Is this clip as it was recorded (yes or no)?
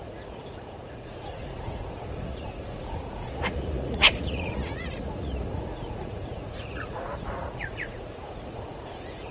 no